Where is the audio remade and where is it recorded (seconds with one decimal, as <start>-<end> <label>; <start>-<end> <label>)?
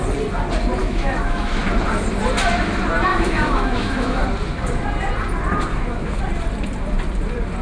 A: 0.0-0.8 recorded; 0.8-1.6 remade; 1.6-3.1 recorded; 3.1-4.2 remade; 4.2-5.7 recorded; 5.7-6.2 remade; 6.2-7.6 recorded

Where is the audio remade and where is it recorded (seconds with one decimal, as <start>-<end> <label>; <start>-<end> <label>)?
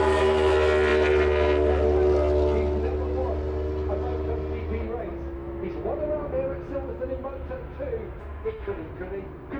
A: 0.0-8.2 recorded; 8.2-8.8 remade; 8.8-9.6 recorded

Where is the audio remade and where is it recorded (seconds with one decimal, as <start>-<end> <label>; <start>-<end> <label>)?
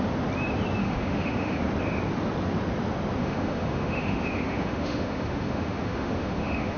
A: 0.0-0.8 recorded; 0.8-1.6 remade; 1.6-3.2 recorded; 3.2-6.8 remade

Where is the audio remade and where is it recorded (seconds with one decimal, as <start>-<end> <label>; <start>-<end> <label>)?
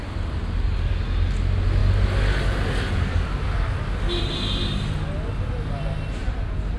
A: 0.0-6.8 recorded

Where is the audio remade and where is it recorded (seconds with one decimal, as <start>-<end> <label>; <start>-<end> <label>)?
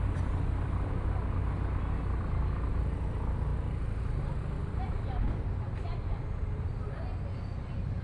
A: 0.0-8.0 recorded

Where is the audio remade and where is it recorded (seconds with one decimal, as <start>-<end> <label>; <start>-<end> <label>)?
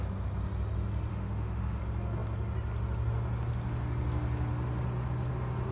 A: 0.0-1.1 recorded; 1.1-1.8 remade; 1.8-5.7 recorded